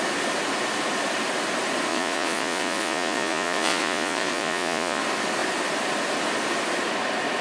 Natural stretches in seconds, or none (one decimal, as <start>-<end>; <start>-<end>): 0.0-1.9; 5.0-7.4